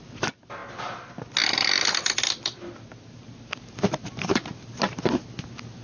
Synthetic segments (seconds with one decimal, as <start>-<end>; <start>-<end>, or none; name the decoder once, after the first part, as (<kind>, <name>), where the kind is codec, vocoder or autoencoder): none